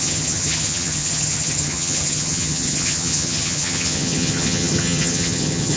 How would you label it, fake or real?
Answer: fake